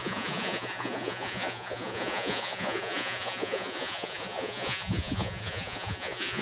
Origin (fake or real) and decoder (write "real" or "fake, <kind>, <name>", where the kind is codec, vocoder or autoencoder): fake, vocoder, Vocos